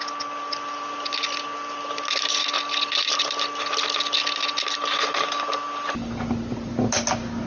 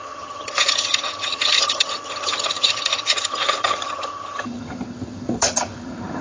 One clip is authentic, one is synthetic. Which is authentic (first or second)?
first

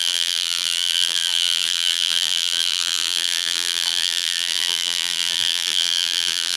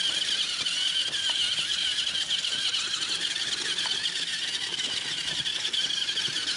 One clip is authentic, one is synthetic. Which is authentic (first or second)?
second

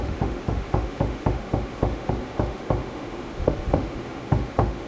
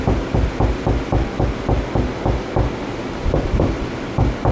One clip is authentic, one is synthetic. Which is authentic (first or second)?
second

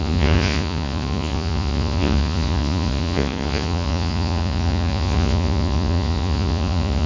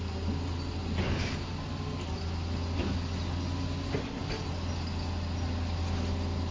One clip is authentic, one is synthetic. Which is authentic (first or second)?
second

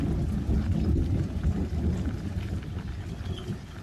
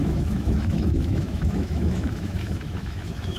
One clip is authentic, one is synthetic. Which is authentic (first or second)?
first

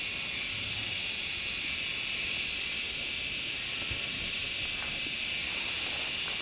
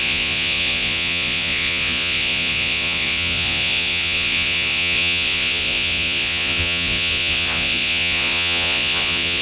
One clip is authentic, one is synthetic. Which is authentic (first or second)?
first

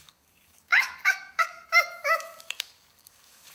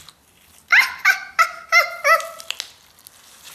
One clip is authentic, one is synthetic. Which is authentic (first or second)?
second